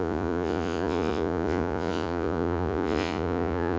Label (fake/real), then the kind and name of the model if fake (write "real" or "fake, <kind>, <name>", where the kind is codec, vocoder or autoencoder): fake, vocoder, Vocos